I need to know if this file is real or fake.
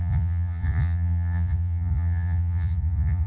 fake